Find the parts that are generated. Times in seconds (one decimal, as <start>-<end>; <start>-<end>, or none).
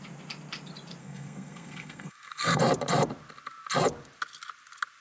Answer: 1.0-2.6